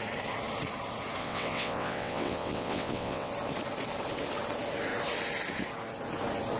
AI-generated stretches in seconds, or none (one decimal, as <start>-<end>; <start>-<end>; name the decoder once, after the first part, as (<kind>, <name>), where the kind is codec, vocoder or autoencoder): 1.2-3.3 (vocoder, WaveNeXt)